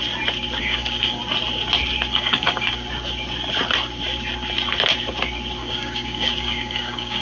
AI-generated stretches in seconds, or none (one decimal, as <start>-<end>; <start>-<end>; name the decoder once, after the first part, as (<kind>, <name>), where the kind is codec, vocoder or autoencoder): 0.6-1.2 (codec, DAC); 2.1-2.7; 5.6-7.2